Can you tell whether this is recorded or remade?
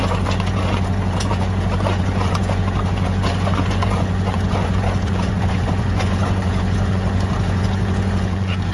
remade